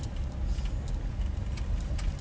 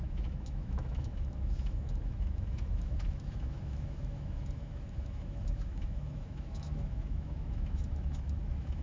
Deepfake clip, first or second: second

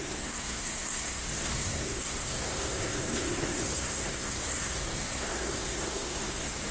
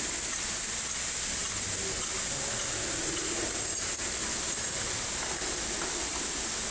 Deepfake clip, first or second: first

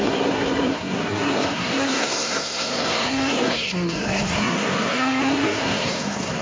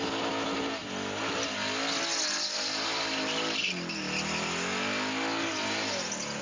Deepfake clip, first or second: first